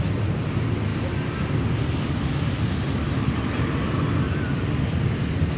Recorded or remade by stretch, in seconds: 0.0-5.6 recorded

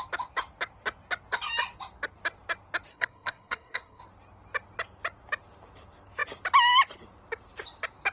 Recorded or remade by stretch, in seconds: 0.0-2.9 recorded; 2.9-4.0 remade; 4.0-8.1 recorded

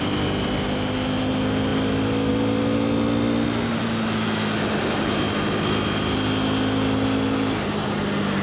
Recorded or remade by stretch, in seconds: 0.0-8.4 recorded

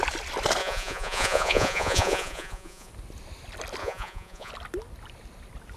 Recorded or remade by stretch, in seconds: 0.0-0.6 recorded; 0.6-2.9 remade; 2.9-3.8 recorded; 3.8-4.5 remade; 4.5-5.8 recorded

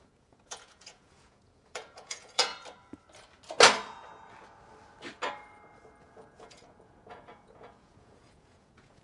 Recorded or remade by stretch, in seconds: 0.0-2.5 remade; 2.5-6.0 recorded; 6.0-9.0 remade